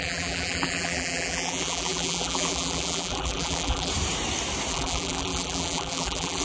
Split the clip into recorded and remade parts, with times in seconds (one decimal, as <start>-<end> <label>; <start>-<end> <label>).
0.0-3.9 remade; 3.9-4.7 recorded; 4.7-6.4 remade